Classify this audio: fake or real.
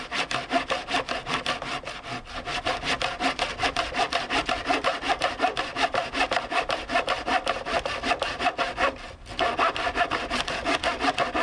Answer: real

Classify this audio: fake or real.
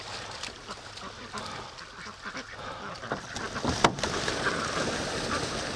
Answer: real